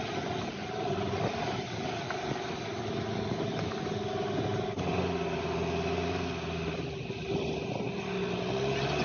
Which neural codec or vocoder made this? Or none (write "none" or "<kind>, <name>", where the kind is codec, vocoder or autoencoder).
none